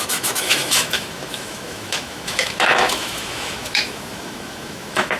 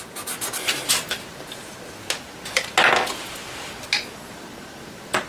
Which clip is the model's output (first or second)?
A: first